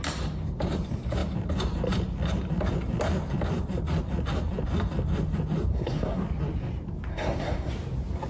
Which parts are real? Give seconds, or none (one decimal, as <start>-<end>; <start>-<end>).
0.0-5.7; 6.2-7.1; 7.7-8.3